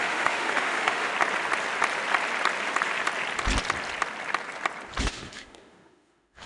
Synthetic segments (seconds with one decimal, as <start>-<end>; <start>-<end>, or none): 0.0-1.1; 5.0-6.5